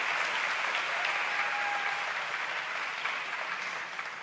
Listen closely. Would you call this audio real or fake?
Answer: real